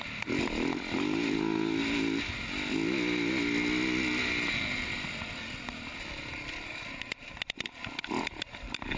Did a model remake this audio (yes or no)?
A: no